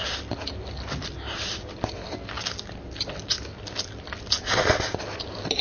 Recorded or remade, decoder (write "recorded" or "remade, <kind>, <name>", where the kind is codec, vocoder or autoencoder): recorded